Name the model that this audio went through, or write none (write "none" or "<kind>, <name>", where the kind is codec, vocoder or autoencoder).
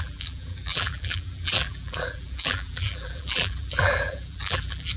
vocoder, BigVGAN v2